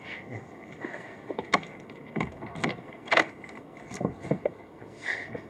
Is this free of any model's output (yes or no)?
no